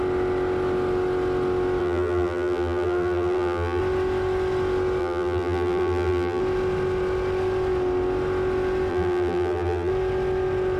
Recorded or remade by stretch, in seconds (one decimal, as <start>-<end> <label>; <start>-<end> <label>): 0.0-1.8 recorded; 1.8-3.8 remade; 3.8-5.0 recorded; 5.0-6.4 remade; 6.4-8.9 recorded; 8.9-9.9 remade; 9.9-10.8 recorded